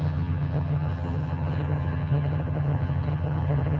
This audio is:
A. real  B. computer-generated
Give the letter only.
B